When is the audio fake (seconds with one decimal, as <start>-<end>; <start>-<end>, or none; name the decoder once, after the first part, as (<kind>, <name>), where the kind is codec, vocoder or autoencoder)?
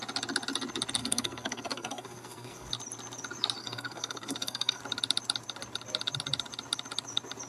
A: 1.0-2.7 (codec, SNAC); 3.6-4.8